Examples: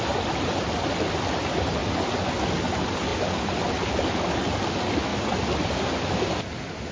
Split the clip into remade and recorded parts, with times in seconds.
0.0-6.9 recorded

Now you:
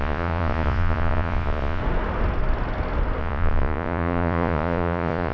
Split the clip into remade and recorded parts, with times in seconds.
0.0-1.8 remade; 1.8-3.2 recorded; 3.2-5.3 remade

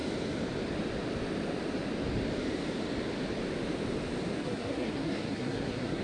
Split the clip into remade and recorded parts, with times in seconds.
0.0-4.4 recorded; 4.4-6.0 remade

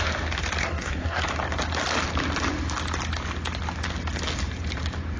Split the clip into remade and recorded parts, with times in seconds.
0.0-0.6 recorded; 0.6-1.2 remade; 1.2-5.2 recorded